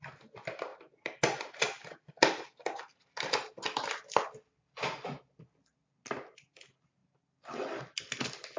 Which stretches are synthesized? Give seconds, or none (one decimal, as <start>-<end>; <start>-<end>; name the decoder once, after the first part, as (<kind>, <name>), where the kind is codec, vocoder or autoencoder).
none